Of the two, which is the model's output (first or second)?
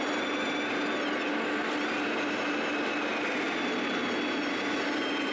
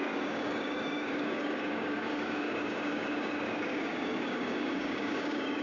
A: second